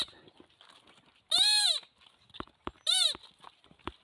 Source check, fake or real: real